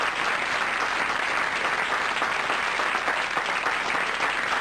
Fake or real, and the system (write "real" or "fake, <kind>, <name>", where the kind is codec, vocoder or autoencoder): real